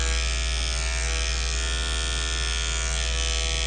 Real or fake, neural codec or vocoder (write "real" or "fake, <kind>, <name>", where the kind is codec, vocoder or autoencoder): real